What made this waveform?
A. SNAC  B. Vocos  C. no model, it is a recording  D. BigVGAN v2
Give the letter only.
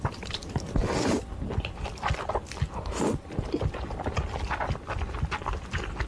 C